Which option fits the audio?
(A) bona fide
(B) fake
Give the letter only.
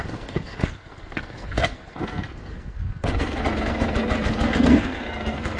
B